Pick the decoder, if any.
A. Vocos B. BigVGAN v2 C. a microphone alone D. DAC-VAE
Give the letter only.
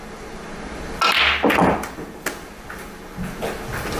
C